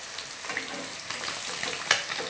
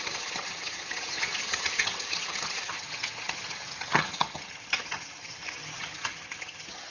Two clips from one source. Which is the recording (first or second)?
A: first